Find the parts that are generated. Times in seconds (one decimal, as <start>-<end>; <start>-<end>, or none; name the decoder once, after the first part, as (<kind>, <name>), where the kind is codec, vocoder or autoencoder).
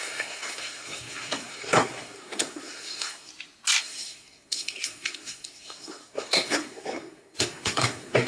0.0-3.3 (codec, SNAC); 3.8-8.3